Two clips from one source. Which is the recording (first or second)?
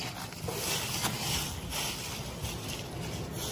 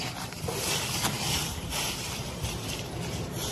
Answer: first